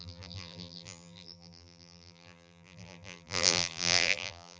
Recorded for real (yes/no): no